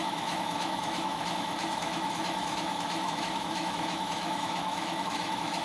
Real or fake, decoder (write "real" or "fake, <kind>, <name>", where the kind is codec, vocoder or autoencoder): fake, autoencoder, DAC-VAE